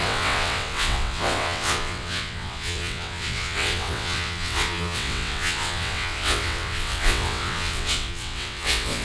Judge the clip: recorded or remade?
remade